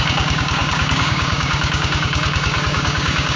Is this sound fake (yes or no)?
yes